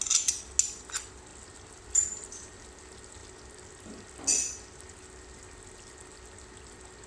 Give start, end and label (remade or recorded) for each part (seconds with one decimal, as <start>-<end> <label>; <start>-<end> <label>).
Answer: 0.0-7.1 recorded